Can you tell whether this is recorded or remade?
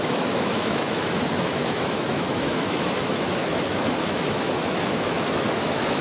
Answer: remade